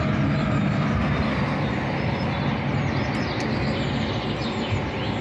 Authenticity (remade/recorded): recorded